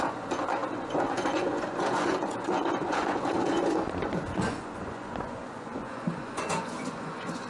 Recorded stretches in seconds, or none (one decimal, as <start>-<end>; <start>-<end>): none